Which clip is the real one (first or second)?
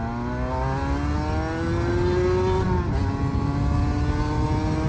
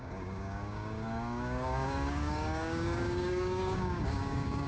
first